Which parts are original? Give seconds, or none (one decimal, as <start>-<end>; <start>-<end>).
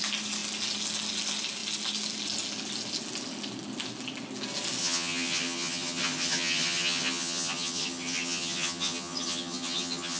0.0-4.8